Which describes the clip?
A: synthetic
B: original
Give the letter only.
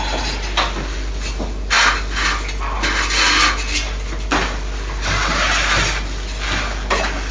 B